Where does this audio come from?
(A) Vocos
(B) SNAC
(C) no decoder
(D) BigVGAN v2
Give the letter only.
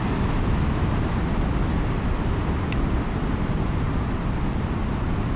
C